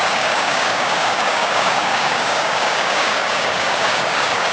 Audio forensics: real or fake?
fake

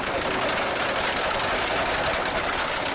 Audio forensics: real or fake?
real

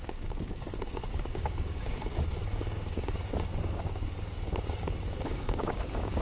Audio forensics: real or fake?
fake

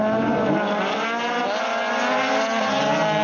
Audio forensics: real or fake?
real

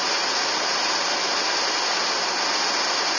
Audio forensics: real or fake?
real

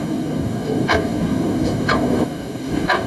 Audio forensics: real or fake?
fake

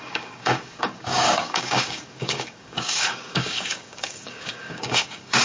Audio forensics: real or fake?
fake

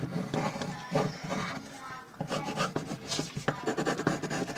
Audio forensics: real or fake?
real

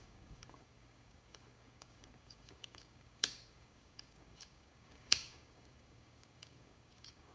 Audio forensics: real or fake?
fake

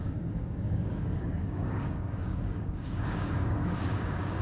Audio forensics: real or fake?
fake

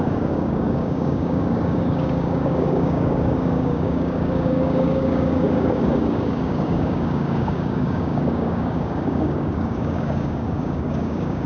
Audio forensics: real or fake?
fake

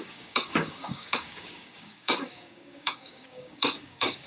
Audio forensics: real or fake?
fake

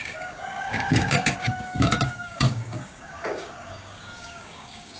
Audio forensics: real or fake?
fake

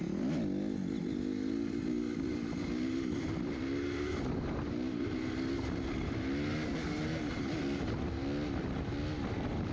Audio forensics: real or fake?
real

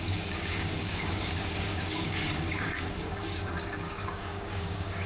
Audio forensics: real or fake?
fake